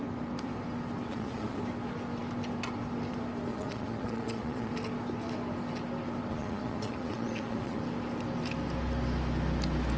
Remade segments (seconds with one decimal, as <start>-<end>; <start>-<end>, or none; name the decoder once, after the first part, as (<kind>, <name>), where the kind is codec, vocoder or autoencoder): 1.1-1.6 (vocoder, Vocos); 3.5-4.7; 6.3-7.8